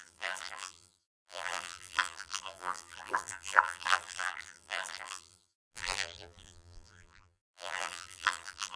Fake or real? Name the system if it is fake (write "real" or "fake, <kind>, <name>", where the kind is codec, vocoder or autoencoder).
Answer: fake, vocoder, BigVGAN v2